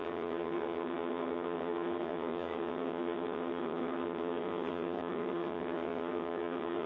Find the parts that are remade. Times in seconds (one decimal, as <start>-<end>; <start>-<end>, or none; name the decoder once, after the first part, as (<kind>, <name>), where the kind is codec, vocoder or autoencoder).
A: 0.0-6.9 (vocoder, HiFi-GAN)